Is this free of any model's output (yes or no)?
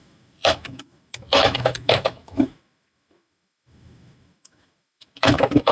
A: no